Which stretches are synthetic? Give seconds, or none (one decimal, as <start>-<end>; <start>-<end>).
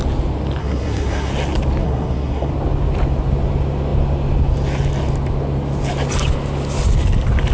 0.6-1.3; 1.8-2.5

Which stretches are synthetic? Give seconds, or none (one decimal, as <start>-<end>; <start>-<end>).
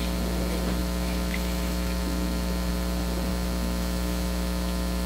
0.8-2.7; 3.3-5.1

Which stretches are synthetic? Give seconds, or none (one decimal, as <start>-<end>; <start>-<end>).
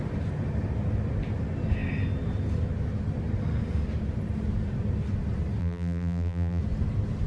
5.6-6.6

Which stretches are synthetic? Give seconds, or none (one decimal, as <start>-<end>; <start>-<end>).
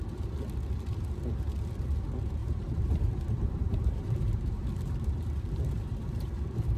2.4-6.8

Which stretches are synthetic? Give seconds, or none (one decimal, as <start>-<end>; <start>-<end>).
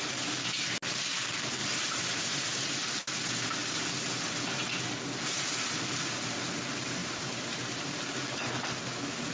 1.6-2.7; 7.0-8.0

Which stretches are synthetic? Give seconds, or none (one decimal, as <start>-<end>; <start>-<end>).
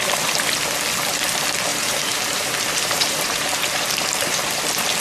1.7-4.6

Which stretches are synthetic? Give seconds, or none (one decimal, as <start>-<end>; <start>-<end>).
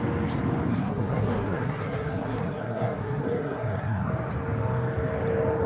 0.7-4.1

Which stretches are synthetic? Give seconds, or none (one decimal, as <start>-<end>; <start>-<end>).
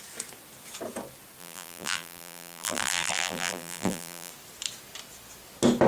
1.4-4.3